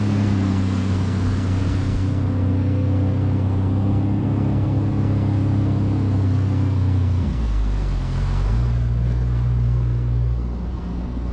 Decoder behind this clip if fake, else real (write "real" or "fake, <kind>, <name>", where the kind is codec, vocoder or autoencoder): fake, codec, SNAC